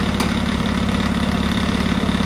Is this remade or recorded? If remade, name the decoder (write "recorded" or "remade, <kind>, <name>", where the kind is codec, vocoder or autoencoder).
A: recorded